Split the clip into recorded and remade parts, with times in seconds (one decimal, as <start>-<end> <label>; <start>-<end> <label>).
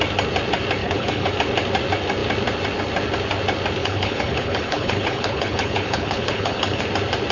0.0-0.8 recorded; 0.8-1.3 remade; 1.3-3.8 recorded; 3.8-6.8 remade; 6.8-7.3 recorded